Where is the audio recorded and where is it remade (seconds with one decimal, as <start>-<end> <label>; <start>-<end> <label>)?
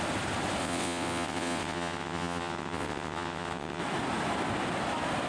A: 0.0-0.6 recorded; 0.6-3.8 remade; 3.8-5.3 recorded